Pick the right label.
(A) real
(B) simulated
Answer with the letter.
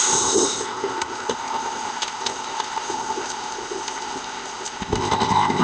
B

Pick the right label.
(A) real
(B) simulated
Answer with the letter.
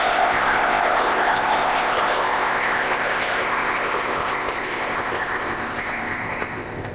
B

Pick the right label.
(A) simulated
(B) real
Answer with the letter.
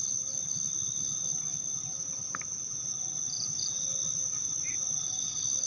B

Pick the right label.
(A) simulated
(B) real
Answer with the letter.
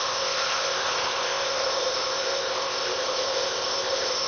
A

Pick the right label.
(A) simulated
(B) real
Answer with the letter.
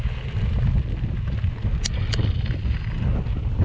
B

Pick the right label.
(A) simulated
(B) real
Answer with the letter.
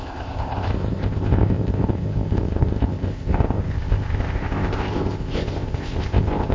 A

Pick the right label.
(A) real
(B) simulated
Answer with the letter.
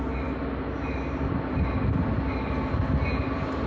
A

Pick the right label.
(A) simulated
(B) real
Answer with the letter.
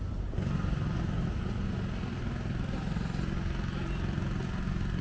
B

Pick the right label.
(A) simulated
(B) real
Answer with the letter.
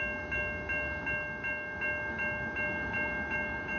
B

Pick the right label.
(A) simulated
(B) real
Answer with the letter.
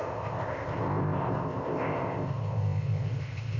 A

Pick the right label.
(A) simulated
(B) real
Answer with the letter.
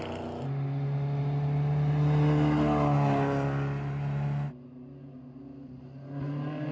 B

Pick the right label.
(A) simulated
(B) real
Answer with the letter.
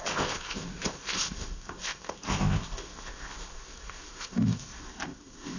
A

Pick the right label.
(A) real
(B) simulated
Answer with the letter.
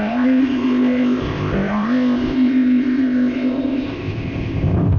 B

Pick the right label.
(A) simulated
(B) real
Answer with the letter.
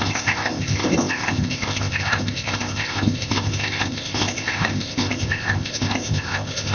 A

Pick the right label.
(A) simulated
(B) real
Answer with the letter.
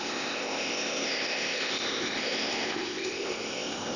A